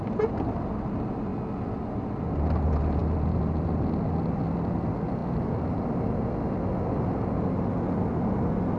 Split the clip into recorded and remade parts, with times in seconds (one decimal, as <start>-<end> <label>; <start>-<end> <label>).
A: 0.0-8.8 recorded